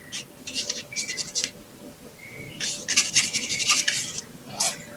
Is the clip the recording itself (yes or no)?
no